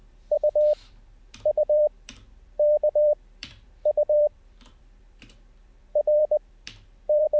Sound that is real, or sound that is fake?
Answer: fake